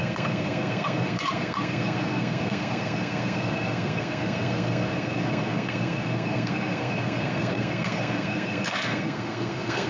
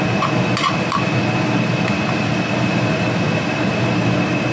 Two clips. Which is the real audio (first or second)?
second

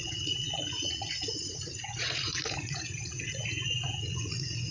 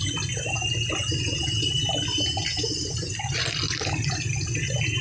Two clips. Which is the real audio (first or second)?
second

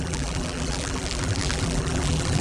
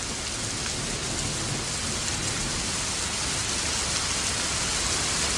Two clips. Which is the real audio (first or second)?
second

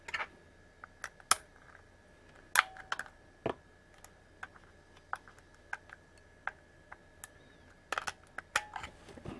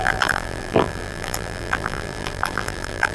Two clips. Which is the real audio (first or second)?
first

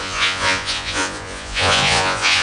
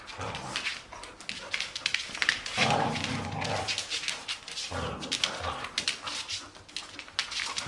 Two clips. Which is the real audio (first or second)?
second